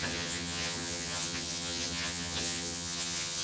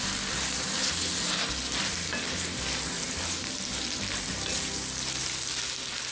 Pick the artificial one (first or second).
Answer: first